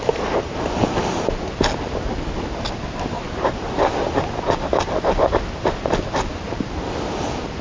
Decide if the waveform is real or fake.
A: real